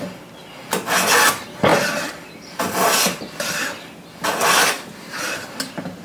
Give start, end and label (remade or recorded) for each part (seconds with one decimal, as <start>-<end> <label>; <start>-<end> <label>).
0.0-1.7 recorded; 1.7-5.3 remade; 5.3-6.0 recorded